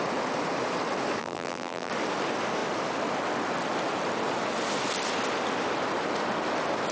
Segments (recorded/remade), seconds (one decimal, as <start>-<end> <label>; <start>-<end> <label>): 0.0-1.2 recorded; 1.2-1.9 remade; 1.9-6.9 recorded